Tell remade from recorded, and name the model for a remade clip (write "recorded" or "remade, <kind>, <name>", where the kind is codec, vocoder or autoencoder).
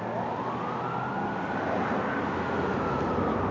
recorded